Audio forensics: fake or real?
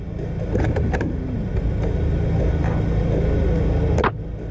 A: real